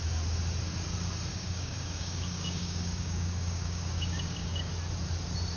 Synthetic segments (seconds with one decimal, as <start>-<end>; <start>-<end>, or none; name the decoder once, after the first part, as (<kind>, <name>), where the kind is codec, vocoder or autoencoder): 1.3-4.7 (codec, DAC)